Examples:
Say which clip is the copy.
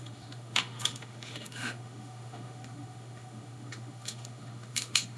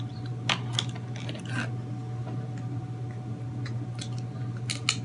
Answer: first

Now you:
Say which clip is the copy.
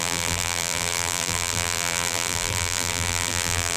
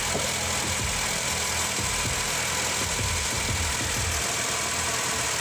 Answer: first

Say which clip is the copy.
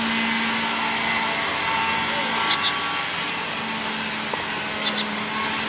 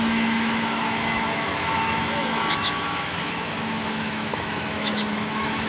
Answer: second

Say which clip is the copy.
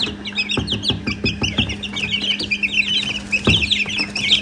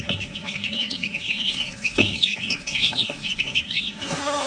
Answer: second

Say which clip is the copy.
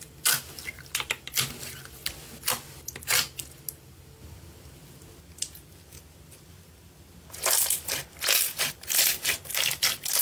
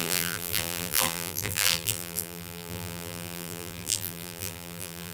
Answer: second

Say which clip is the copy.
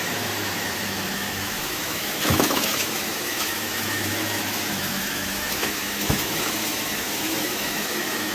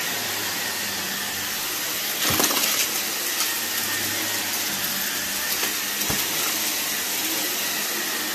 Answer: first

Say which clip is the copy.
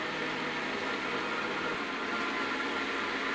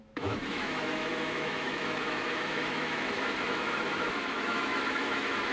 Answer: second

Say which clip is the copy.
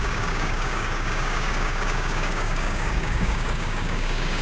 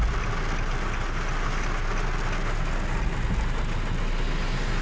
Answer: first